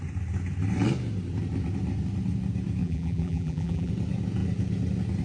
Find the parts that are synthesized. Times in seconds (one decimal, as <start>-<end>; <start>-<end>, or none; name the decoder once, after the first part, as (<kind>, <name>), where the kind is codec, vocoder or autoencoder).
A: 2.8-3.9 (vocoder, BigVGAN v2)